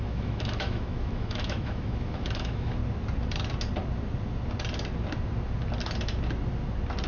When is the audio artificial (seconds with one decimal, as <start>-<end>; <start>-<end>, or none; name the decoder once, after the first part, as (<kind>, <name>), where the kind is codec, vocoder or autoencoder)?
0.0-2.8 (autoencoder, DAC-VAE)

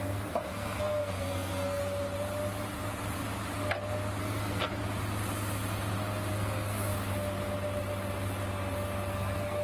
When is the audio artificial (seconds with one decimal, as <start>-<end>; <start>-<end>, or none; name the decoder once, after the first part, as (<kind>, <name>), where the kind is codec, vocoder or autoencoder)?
0.0-1.8 (codec, SNAC); 4.2-4.8; 6.3-6.9; 9.1-9.6

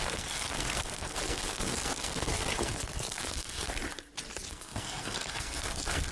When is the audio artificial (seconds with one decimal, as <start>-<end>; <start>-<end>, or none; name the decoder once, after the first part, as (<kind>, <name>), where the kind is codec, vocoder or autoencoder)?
0.0-3.8 (codec, SNAC); 4.5-6.1

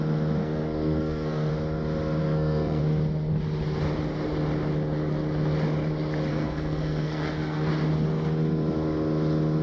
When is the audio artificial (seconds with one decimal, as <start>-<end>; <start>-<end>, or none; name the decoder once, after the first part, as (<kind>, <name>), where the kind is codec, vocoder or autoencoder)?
0.4-1.5 (codec, SNAC); 2.2-2.8; 6.3-7.7

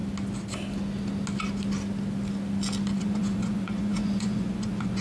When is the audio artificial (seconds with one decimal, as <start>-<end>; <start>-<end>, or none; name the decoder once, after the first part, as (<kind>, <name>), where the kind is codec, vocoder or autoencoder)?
3.0-5.0 (vocoder, Vocos)

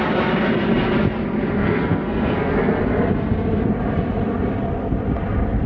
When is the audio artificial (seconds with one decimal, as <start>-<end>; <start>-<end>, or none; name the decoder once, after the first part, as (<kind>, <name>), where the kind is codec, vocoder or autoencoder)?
1.6-2.8 (codec, SNAC)